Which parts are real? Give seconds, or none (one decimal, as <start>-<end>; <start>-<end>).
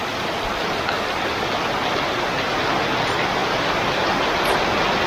0.0-5.1